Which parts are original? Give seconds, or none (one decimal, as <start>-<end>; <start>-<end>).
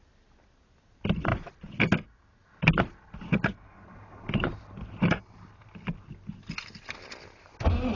0.0-8.0